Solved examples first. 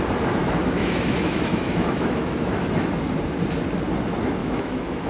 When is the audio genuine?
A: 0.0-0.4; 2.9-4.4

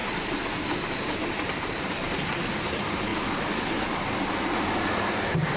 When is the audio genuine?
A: 0.0-1.3; 3.1-4.9

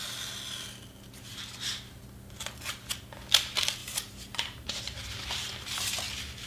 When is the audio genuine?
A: 0.0-3.8; 4.7-6.5

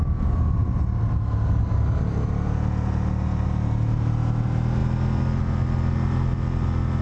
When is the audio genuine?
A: 0.0-7.0

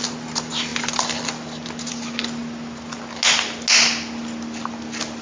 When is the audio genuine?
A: 0.0-5.2

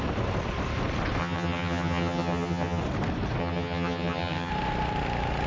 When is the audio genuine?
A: 0.0-1.2; 2.8-3.4; 4.5-5.5

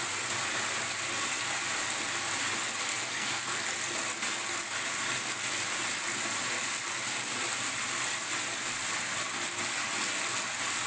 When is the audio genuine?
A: 0.0-2.9; 3.7-10.9

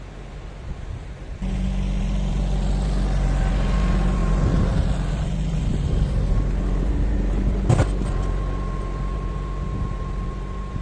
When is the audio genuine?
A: 0.0-10.8